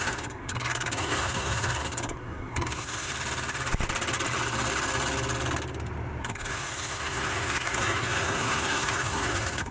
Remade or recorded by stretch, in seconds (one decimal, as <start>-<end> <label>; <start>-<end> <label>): 0.0-3.1 remade; 3.1-6.2 recorded; 6.2-9.7 remade